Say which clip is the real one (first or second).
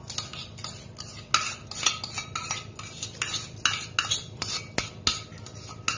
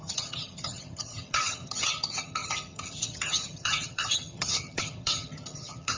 first